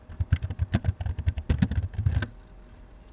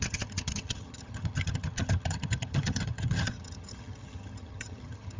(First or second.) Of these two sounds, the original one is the first